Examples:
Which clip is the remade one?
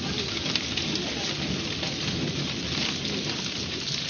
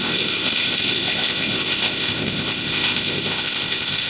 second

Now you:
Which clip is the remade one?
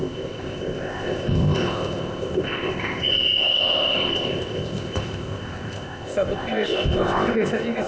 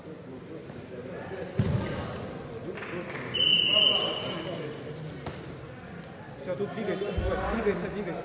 first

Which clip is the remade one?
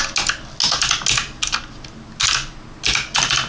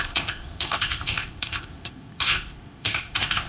second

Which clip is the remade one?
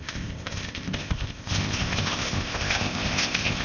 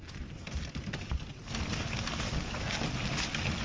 first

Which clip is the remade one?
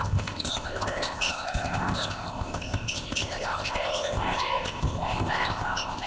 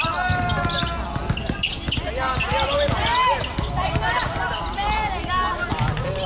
first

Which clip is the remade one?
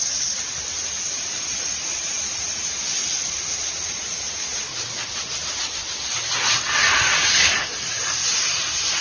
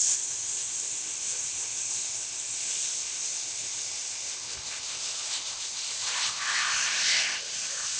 second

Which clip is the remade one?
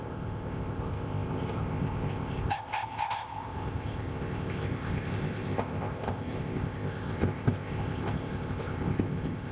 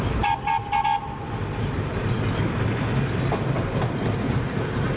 first